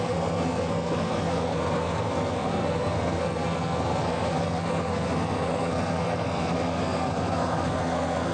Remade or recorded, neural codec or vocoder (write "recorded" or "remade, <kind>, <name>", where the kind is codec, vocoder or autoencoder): remade, codec, SNAC